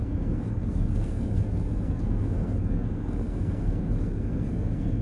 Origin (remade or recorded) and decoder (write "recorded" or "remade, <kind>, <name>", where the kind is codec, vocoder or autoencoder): remade, codec, SNAC